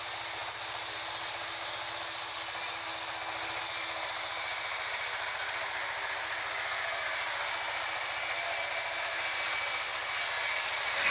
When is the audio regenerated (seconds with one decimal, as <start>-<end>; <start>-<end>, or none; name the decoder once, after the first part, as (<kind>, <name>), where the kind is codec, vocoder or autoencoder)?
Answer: none